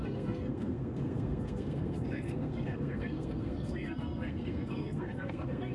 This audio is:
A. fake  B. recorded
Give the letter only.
A